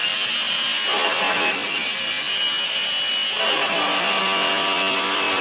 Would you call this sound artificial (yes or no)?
no